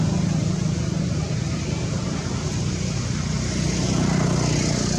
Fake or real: real